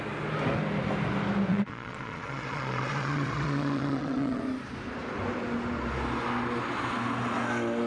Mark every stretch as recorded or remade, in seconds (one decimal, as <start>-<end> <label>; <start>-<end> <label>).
0.0-1.5 recorded; 1.5-4.4 remade; 4.4-7.9 recorded